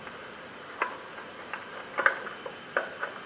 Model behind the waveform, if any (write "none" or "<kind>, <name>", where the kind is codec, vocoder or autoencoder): none